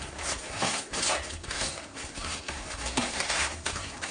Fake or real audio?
fake